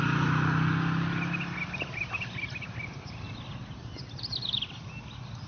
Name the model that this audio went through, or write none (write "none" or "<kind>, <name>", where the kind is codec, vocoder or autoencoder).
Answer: none